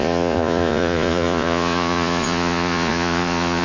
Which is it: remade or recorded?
remade